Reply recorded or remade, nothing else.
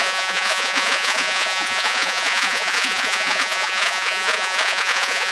remade